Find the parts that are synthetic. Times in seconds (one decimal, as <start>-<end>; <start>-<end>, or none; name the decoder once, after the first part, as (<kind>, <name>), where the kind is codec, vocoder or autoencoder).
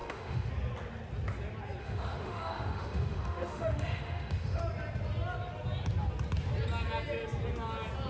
0.0-0.5 (autoencoder, DAC-VAE); 1.8-4.6